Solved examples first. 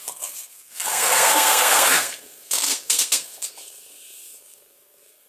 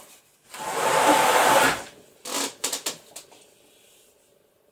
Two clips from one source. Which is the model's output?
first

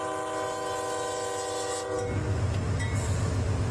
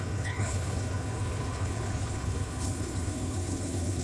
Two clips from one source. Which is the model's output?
second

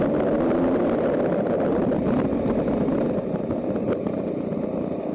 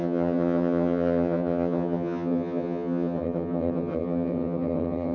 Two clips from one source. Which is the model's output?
second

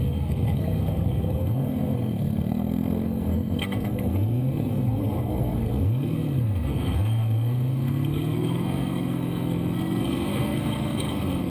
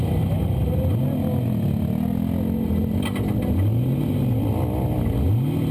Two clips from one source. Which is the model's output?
first